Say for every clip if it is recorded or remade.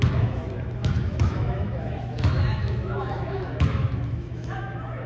remade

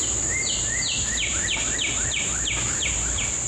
remade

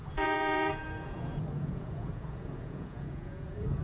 remade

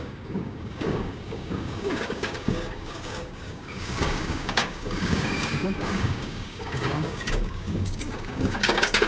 remade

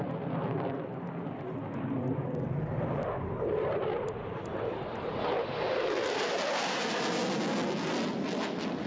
recorded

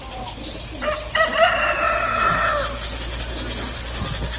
recorded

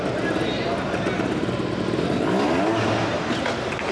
recorded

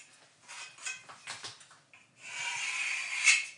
recorded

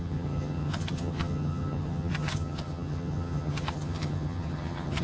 remade